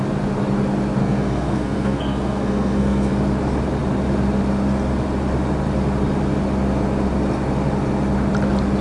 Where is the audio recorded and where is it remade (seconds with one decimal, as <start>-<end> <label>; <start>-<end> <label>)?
0.0-1.0 recorded; 1.0-3.1 remade; 3.1-8.8 recorded